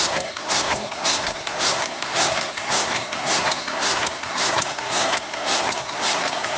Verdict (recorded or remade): remade